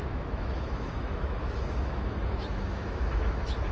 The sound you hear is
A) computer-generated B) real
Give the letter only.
A